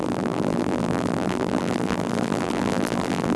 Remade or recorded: remade